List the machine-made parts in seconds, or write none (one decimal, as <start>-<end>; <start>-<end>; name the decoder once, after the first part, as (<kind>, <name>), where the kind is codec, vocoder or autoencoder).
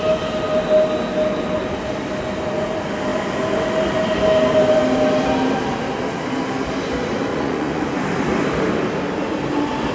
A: 7.3-7.8 (vocoder, Vocos)